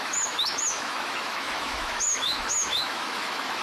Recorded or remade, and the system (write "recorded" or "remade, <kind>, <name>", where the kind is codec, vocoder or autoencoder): remade, autoencoder, DAC-VAE